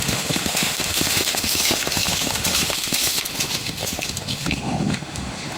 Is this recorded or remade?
remade